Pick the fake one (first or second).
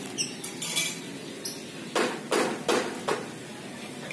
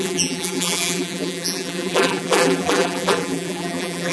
second